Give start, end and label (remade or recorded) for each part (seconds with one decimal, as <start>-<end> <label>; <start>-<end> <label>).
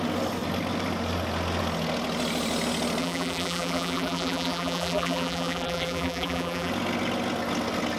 0.0-3.0 recorded; 3.0-6.7 remade; 6.7-8.0 recorded